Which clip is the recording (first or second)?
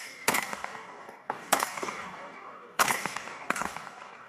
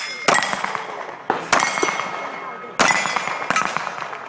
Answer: second